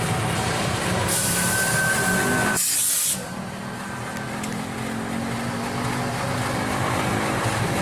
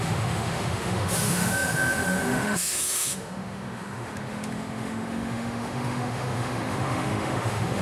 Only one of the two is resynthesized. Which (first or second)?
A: second